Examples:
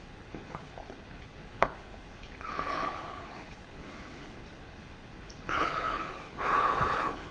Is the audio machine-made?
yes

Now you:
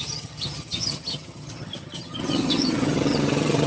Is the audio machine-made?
yes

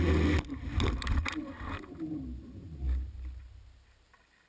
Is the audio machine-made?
no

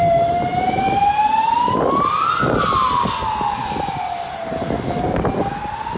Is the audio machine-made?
no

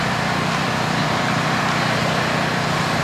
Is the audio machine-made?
no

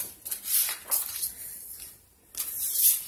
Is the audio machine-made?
no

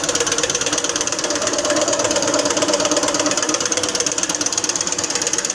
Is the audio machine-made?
yes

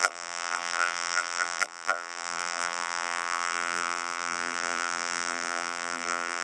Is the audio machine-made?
yes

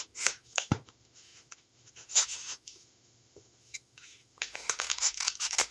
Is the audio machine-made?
yes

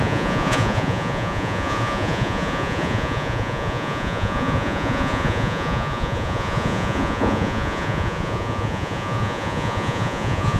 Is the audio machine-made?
yes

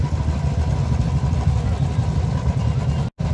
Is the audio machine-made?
no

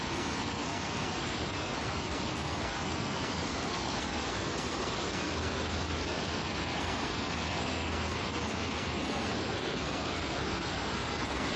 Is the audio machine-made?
yes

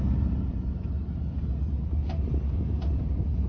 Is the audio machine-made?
yes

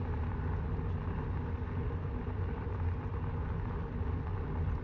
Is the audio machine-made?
no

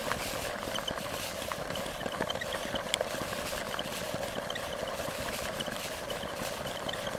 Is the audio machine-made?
no